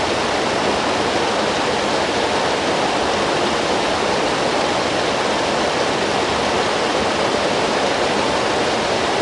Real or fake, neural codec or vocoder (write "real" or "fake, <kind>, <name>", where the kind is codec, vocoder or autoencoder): real